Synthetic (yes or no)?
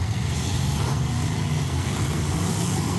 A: yes